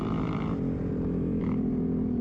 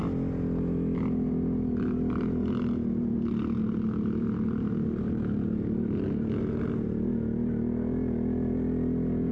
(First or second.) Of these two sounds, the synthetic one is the first